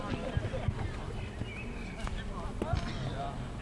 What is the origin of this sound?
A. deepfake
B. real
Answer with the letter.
B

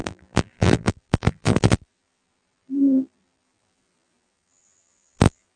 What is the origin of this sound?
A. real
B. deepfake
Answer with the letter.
B